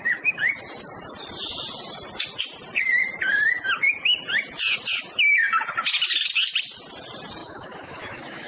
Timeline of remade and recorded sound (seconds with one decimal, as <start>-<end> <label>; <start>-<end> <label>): 0.0-7.4 recorded; 7.4-8.5 remade